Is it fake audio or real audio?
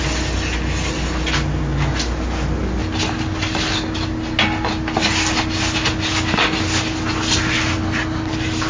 real